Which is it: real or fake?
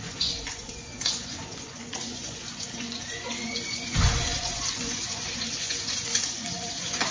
fake